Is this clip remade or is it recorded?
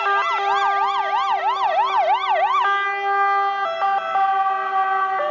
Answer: recorded